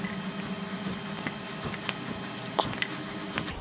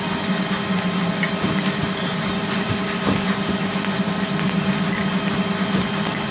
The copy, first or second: second